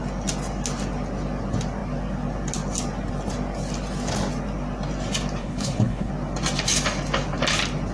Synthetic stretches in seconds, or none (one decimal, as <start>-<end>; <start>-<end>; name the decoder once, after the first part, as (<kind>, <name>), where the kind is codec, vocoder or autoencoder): 5.4-6.1 (codec, HILCodec)